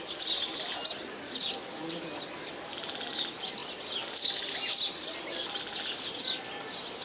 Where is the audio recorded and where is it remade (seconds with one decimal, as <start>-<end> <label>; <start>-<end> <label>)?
0.0-7.0 recorded